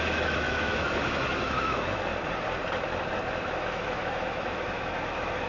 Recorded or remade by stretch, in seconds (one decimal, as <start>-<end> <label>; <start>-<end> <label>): 0.0-2.1 remade; 2.1-3.4 recorded; 3.4-5.5 remade